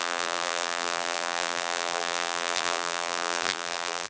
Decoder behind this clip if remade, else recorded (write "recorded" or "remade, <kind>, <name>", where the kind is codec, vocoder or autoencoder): remade, vocoder, BigVGAN v2